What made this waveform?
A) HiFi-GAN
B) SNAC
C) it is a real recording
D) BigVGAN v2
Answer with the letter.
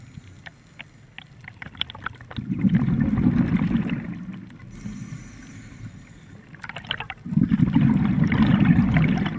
C